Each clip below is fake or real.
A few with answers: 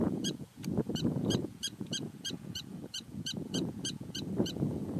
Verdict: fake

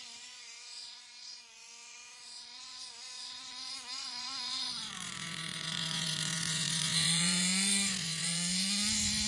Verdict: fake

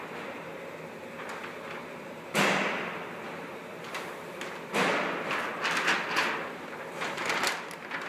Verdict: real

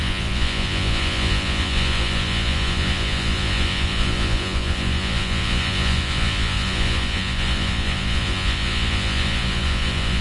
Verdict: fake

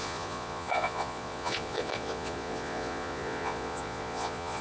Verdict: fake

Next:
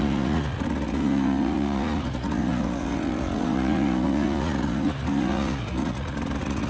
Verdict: fake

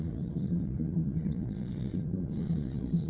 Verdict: fake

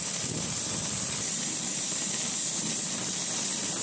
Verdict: real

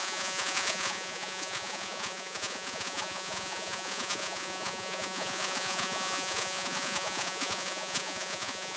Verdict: fake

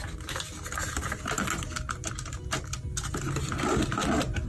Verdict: real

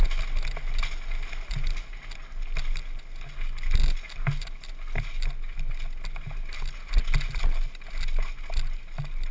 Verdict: real